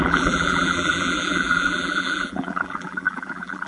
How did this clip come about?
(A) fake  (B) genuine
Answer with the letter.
A